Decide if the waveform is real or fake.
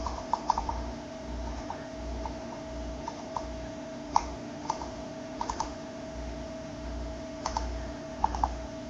fake